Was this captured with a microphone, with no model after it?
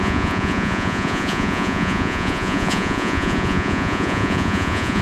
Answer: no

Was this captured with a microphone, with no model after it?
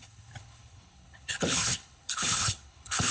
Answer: no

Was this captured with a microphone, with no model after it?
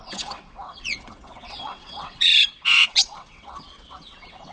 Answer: no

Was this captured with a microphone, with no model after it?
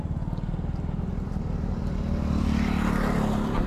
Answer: yes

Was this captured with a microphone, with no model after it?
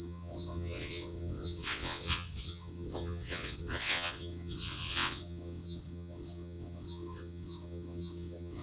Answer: no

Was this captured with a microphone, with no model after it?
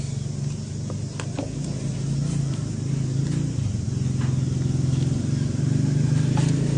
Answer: yes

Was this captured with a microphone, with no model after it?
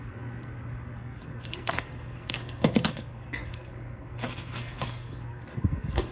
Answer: no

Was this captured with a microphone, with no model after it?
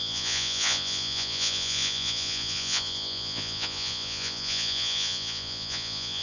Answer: no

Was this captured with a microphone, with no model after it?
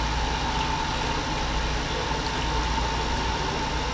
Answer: yes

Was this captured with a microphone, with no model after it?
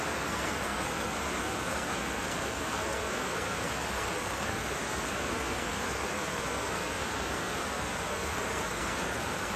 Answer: no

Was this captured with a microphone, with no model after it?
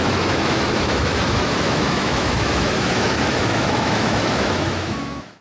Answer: no